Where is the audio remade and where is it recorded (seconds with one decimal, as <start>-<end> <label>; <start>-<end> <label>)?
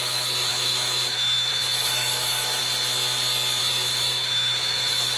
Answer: 0.0-2.6 remade; 2.6-3.6 recorded; 3.6-5.2 remade